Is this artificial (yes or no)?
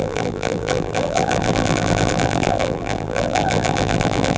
yes